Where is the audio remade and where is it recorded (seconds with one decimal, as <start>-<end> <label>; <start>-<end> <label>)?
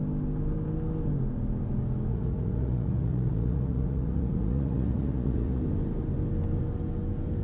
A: 0.0-2.1 recorded; 2.1-5.6 remade; 5.6-7.4 recorded